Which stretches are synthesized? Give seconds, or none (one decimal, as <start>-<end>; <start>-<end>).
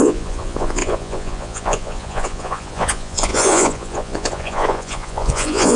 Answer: 0.0-5.8